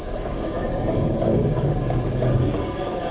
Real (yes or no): no